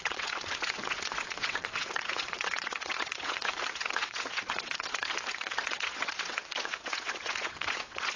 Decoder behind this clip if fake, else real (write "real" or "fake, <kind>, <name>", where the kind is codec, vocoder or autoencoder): fake, vocoder, WaveNeXt